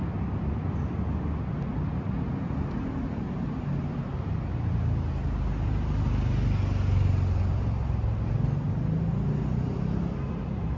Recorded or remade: recorded